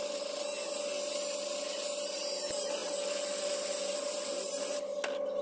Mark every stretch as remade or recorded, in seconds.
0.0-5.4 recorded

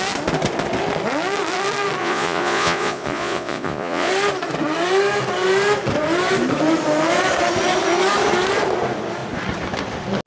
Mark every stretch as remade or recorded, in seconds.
0.0-2.0 recorded; 2.0-4.1 remade; 4.1-10.3 recorded

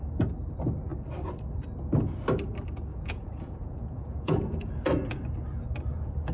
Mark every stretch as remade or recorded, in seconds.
0.0-2.9 recorded; 2.9-4.7 remade; 4.7-6.3 recorded

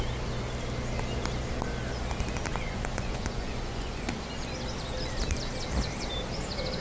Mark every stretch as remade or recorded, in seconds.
0.0-2.5 recorded; 2.5-4.1 remade; 4.1-6.8 recorded

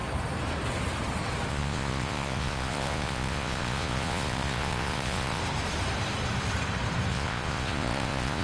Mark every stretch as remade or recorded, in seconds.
0.0-1.5 recorded; 1.5-5.4 remade; 5.4-7.1 recorded; 7.1-8.4 remade